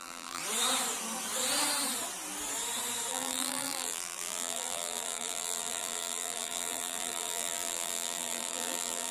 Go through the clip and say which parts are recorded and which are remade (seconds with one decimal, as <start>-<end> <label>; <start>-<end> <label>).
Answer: 0.0-0.4 remade; 0.4-3.1 recorded; 3.1-9.1 remade